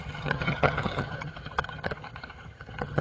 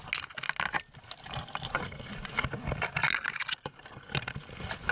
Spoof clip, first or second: first